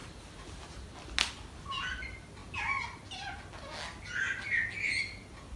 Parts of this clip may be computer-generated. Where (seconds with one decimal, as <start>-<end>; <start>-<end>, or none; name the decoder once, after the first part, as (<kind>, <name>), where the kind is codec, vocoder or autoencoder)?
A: none